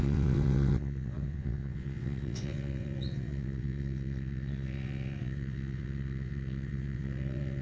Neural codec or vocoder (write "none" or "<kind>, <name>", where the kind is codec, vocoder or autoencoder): vocoder, WaveNeXt